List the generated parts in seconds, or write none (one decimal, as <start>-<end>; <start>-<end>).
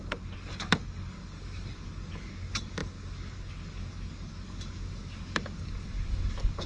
0.0-6.7